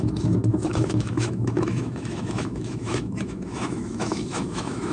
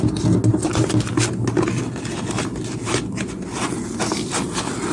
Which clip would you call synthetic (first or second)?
first